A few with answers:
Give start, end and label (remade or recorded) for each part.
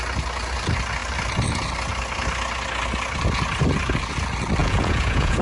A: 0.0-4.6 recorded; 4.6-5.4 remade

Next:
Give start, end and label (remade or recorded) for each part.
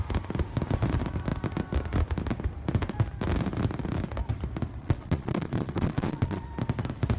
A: 0.0-4.8 recorded; 4.8-6.5 remade; 6.5-7.2 recorded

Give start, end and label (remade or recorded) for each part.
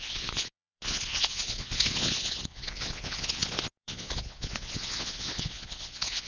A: 0.0-6.3 remade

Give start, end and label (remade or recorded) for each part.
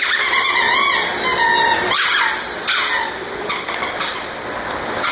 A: 0.0-5.1 recorded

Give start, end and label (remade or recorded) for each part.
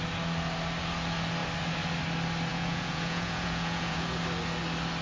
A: 0.0-2.5 recorded; 2.5-4.2 remade; 4.2-5.0 recorded